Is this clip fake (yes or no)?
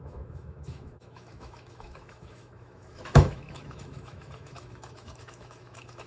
yes